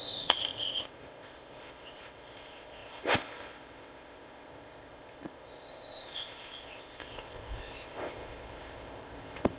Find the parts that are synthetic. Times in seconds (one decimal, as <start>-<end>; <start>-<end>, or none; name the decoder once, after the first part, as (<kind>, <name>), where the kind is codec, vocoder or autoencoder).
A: 0.0-9.6 (codec, ZipCodec)